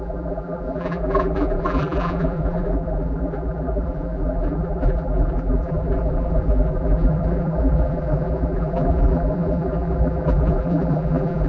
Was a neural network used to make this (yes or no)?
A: yes